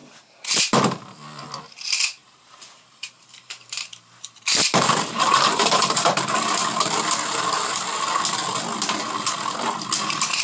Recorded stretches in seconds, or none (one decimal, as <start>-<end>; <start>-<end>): 1.0-2.2; 6.3-10.4